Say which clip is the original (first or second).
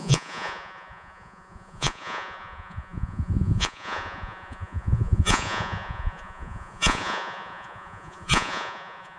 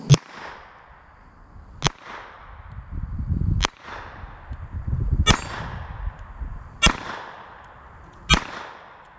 second